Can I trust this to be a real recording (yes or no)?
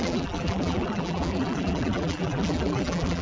no